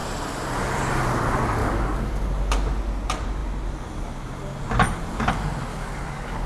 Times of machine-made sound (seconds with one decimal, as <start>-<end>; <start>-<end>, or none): 1.6-2.1; 5.7-6.5

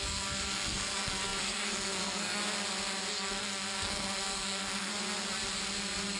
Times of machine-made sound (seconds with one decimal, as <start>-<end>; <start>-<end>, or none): 0.0-2.4; 3.1-4.9

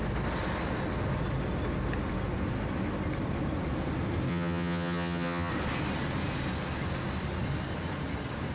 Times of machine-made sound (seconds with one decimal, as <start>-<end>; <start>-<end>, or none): 4.3-5.5

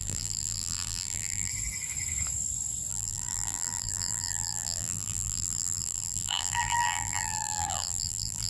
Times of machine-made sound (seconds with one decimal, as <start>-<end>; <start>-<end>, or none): 0.0-1.5; 2.9-8.5

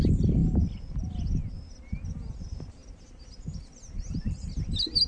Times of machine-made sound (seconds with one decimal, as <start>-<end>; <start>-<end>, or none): none